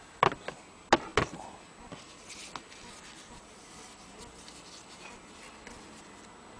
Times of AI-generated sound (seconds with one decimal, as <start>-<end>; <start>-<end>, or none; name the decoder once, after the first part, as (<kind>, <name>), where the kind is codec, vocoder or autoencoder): none